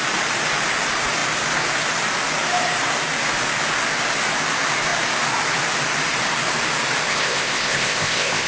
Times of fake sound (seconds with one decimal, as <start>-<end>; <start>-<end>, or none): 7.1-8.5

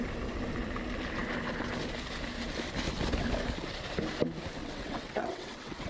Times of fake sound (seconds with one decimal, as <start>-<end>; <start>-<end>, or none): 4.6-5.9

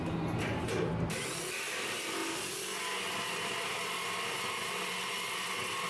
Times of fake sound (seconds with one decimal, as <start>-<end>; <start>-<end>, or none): none

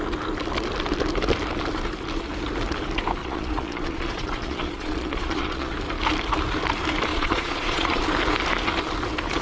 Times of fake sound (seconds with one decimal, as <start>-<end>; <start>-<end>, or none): 3.2-5.7; 7.1-8.0

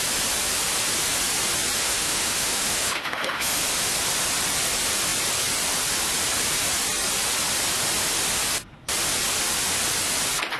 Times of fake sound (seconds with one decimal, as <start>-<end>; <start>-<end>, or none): 1.8-3.6